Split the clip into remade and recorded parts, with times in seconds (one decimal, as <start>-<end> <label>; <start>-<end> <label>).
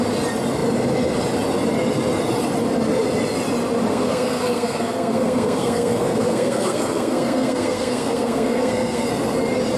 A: 0.0-3.9 recorded; 3.9-9.1 remade; 9.1-9.8 recorded